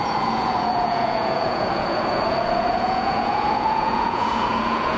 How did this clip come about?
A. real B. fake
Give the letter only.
B